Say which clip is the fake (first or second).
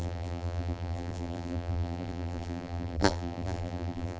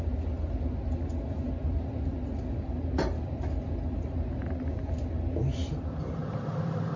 first